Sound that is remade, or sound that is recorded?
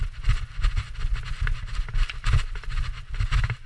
recorded